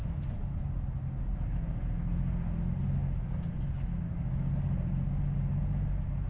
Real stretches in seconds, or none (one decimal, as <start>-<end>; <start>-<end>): 0.0-6.3